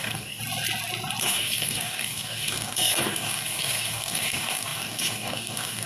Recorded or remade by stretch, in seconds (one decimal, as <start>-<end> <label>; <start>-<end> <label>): 0.0-0.4 remade; 0.4-1.2 recorded; 1.2-5.9 remade